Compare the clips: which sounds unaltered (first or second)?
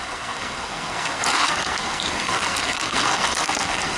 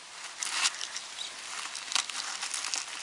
second